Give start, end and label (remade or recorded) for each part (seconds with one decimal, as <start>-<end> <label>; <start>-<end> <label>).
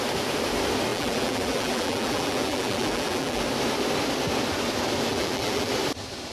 0.0-0.9 recorded; 0.9-3.4 remade; 3.4-5.1 recorded; 5.1-5.7 remade; 5.7-6.3 recorded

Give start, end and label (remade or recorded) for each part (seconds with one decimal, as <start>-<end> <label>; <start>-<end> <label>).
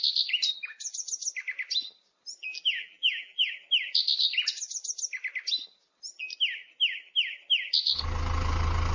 0.0-2.5 recorded; 2.5-3.5 remade; 3.5-8.9 recorded